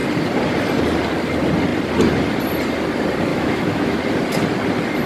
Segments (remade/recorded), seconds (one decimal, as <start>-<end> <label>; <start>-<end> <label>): 0.0-3.3 recorded; 3.3-4.0 remade; 4.0-5.1 recorded